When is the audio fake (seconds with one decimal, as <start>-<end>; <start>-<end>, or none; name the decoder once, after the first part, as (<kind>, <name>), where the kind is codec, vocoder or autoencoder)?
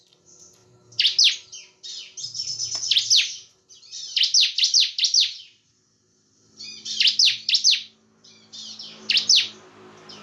none